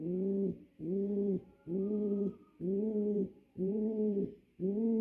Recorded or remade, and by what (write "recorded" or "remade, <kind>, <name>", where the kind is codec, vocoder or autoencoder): remade, vocoder, BigVGAN v2